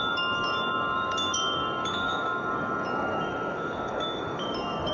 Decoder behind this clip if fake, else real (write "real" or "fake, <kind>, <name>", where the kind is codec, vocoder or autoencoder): fake, codec, DAC